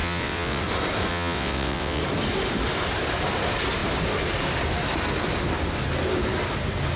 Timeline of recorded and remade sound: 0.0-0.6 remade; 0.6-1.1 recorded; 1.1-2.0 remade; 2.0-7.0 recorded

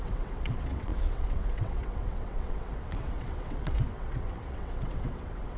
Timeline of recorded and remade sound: 0.0-5.6 remade